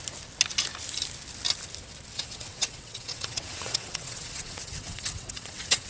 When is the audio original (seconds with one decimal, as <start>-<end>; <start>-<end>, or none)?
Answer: 0.0-2.1